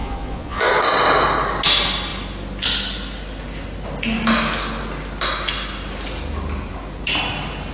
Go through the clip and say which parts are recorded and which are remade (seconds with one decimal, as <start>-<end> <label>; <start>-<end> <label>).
0.0-0.7 remade; 0.7-7.7 recorded